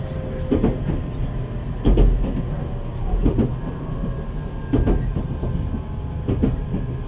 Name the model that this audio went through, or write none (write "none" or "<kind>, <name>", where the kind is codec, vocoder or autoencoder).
none